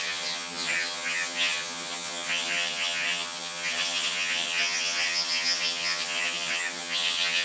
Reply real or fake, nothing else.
fake